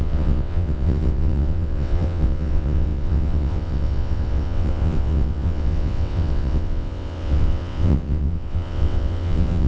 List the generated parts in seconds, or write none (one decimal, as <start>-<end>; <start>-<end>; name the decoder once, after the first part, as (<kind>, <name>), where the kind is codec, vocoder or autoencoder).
0.0-9.7 (vocoder, WaveNeXt)